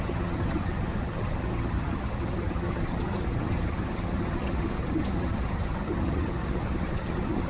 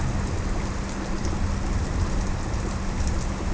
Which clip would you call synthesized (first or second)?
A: first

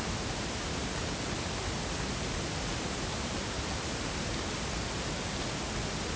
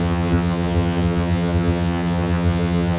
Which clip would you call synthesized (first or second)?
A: second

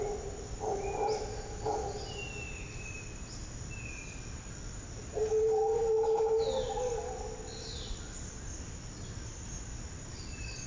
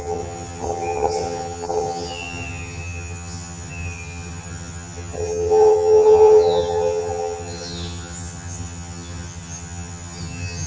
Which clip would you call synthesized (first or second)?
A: second